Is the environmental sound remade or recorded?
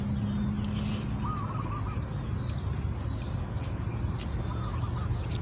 recorded